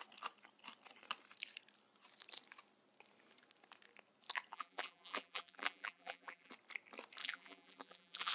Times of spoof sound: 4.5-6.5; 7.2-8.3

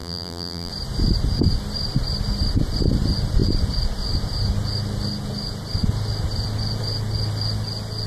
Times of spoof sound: 0.0-0.7

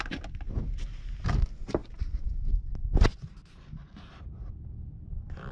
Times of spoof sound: none

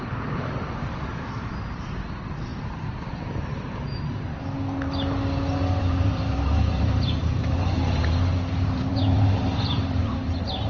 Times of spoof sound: 0.0-4.3; 5.8-10.7